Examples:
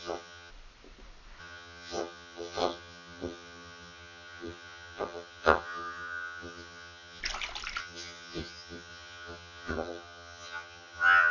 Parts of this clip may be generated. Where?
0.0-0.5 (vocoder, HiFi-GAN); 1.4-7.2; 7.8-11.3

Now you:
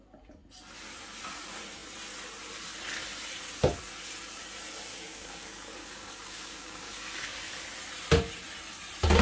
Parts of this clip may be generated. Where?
4.9-7.5 (codec, DAC)

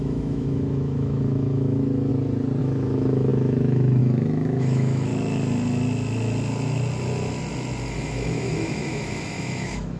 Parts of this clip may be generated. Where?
0.0-2.1 (autoencoder, DAC-VAE); 2.6-5.1; 8.0-10.0

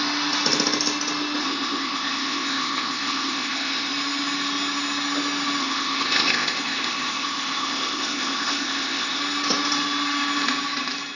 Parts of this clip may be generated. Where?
1.4-3.9 (codec, ZipCodec); 5.6-9.2

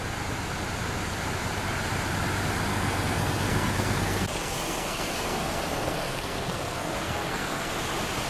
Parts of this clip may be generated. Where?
2.7-7.7 (codec, SNAC)